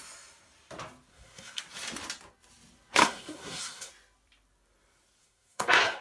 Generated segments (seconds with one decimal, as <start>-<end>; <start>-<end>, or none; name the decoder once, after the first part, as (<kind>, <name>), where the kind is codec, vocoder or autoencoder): 1.1-1.6 (codec, SNAC); 3.0-3.9; 5.2-6.0